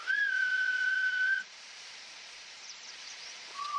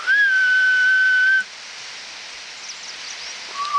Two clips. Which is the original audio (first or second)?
second